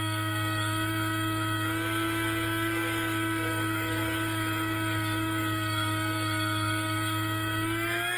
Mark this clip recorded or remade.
remade